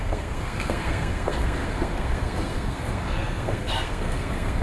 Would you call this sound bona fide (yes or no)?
no